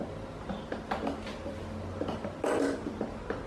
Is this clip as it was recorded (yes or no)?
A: yes